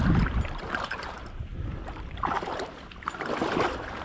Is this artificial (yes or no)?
yes